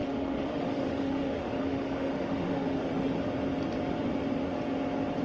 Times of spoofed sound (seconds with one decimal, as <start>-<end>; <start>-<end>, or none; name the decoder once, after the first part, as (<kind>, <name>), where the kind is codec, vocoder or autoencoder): 0.0-3.1 (autoencoder, DAC-VAE)